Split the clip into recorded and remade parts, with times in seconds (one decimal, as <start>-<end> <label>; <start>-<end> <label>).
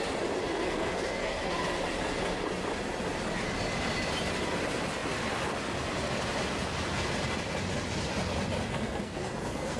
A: 0.0-0.5 recorded; 0.5-1.5 remade; 1.5-8.7 recorded; 8.7-9.8 remade